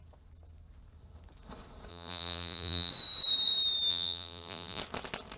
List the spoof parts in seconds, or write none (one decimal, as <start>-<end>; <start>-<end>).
1.9-2.9; 3.9-4.8